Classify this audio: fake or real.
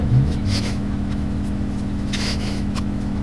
fake